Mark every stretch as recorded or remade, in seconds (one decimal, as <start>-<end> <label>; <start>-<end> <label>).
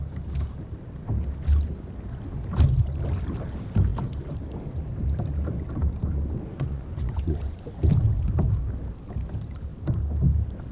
0.0-6.5 recorded; 6.5-7.7 remade; 7.7-10.7 recorded